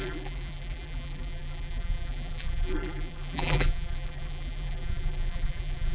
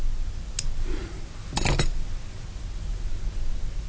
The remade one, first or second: first